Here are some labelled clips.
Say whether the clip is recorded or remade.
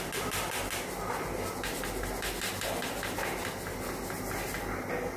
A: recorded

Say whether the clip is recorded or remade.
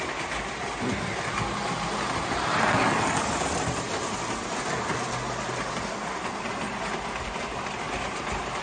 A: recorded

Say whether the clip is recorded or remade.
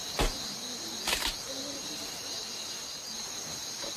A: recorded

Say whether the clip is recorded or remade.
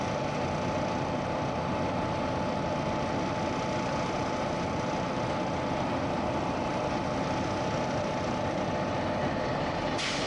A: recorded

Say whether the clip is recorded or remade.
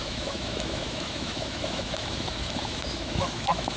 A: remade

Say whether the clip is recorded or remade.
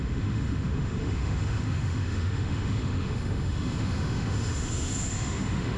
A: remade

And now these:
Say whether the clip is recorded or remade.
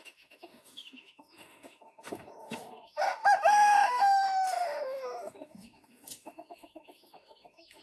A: remade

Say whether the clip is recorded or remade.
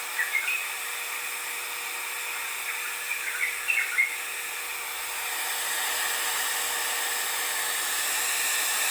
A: recorded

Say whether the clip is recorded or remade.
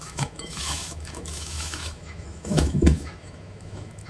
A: remade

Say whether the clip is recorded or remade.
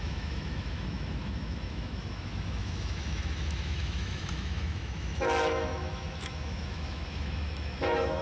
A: remade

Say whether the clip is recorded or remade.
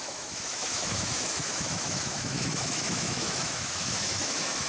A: remade